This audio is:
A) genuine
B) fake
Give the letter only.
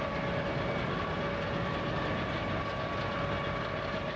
A